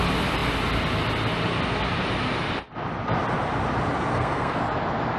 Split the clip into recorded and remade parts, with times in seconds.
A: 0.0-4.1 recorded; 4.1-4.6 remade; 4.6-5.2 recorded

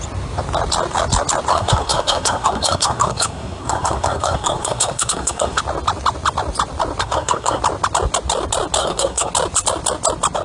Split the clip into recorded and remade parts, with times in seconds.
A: 0.0-1.5 recorded; 1.5-5.6 remade; 5.6-7.0 recorded; 7.0-7.6 remade; 7.6-8.8 recorded; 8.8-9.3 remade; 9.3-10.4 recorded

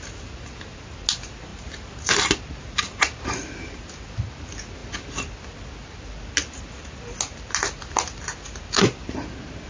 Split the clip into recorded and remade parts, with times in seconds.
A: 0.0-9.7 recorded

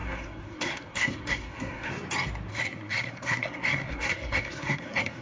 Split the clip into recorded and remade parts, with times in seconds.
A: 0.0-1.9 remade; 1.9-2.5 recorded; 2.5-5.2 remade

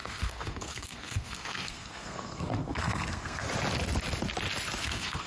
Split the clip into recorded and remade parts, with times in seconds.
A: 0.0-3.4 remade; 3.4-4.8 recorded; 4.8-5.3 remade